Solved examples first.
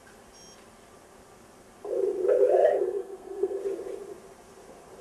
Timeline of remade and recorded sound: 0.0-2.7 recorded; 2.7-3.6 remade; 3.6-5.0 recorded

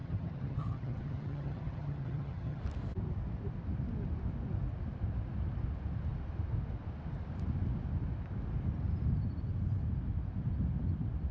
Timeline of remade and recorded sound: 0.0-2.6 remade; 2.6-11.3 recorded